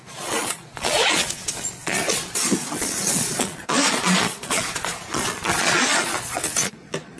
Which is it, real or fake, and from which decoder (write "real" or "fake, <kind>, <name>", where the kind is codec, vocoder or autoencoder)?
fake, vocoder, Vocos